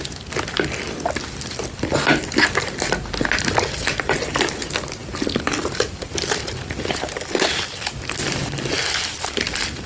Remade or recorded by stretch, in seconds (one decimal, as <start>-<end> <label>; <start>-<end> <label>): 0.0-9.9 recorded